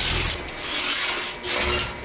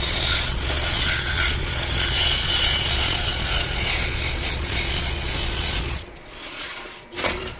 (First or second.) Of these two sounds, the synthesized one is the second